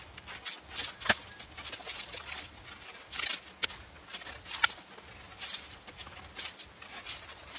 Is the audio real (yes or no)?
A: yes